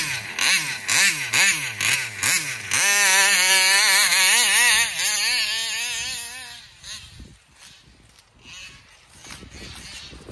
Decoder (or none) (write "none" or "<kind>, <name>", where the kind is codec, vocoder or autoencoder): none